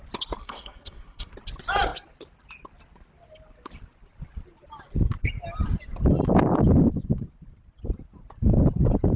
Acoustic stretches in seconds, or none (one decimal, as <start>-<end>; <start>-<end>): 0.0-0.4; 1.3-9.2